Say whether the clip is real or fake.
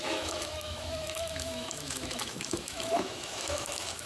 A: fake